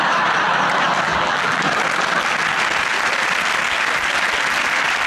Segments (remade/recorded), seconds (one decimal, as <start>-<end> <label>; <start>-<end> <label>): 0.0-1.1 recorded; 1.1-1.6 remade; 1.6-5.1 recorded